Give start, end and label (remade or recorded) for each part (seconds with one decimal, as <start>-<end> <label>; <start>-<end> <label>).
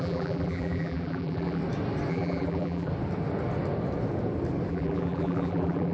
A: 0.0-1.6 remade; 1.6-2.1 recorded; 2.1-2.9 remade; 2.9-4.7 recorded; 4.7-5.9 remade